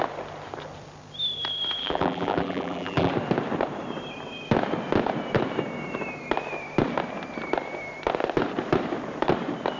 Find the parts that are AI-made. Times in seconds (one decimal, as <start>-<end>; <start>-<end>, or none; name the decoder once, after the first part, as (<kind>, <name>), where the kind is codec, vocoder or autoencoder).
1.8-3.1 (vocoder, BigVGAN v2)